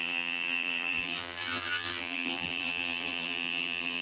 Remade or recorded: remade